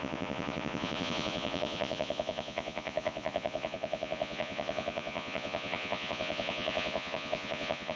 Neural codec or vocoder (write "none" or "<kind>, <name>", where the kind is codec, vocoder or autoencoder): vocoder, Vocos